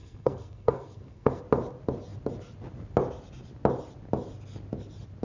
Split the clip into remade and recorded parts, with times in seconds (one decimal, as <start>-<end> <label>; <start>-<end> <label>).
0.0-1.4 remade; 1.4-5.2 recorded